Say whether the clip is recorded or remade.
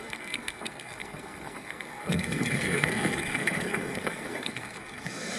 remade